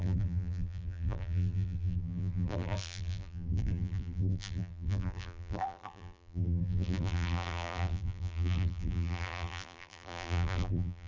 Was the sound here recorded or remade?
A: remade